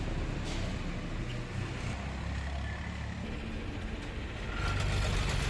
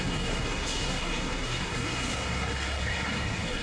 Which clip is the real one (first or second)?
first